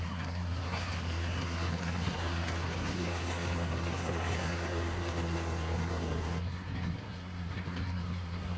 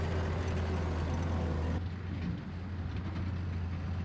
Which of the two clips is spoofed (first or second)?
first